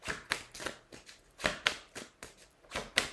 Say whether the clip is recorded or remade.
recorded